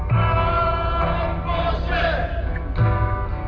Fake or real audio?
real